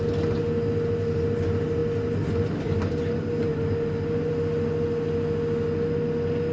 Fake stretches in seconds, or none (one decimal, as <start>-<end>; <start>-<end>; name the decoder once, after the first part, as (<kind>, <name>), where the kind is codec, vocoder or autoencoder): none